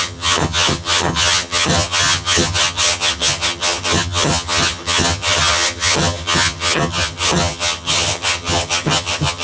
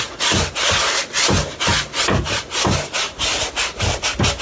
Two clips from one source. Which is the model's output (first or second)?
first